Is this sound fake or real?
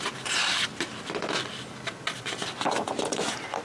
real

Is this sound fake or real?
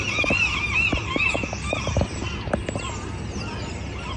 real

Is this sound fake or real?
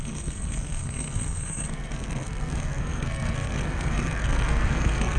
fake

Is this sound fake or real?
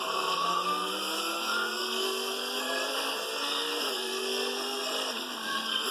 fake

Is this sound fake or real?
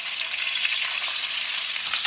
real